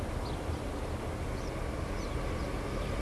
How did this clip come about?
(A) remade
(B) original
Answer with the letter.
B